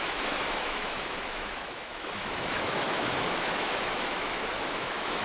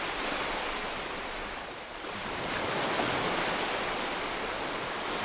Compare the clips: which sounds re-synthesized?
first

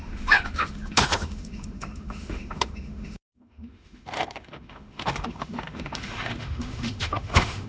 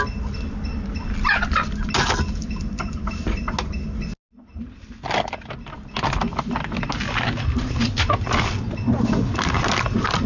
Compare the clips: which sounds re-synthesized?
first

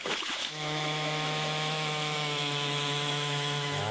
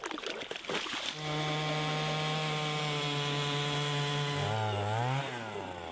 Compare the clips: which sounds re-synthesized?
first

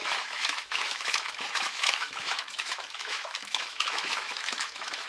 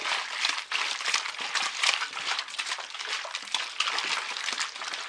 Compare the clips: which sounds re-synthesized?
first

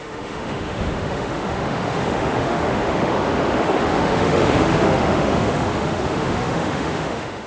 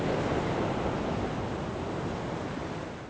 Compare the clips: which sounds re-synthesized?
first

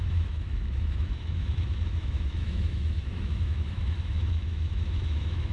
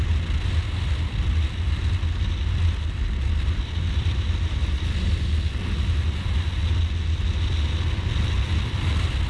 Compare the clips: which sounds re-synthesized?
first